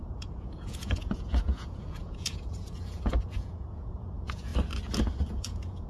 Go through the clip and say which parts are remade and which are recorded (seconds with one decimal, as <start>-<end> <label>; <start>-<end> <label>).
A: 0.0-4.5 remade; 4.5-5.3 recorded; 5.3-5.9 remade